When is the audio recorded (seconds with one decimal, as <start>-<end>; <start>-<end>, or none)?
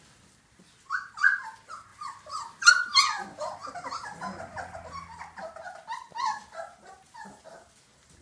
0.0-8.2